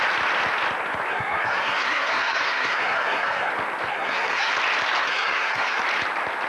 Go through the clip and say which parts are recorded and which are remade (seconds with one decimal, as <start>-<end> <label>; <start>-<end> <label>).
0.0-1.1 recorded; 1.1-3.5 remade; 3.5-3.9 recorded; 3.9-4.5 remade; 4.5-5.0 recorded; 5.0-5.8 remade; 5.8-6.5 recorded